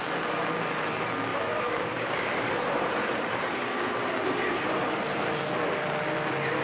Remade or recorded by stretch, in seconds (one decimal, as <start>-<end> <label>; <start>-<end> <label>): 0.0-1.3 recorded; 1.3-5.2 remade; 5.2-6.6 recorded